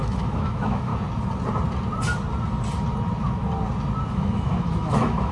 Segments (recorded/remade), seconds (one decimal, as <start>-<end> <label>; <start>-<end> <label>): 0.0-0.9 remade; 0.9-4.1 recorded; 4.1-5.3 remade